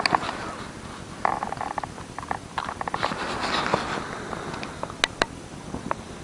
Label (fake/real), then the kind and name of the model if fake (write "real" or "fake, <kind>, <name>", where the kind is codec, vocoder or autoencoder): real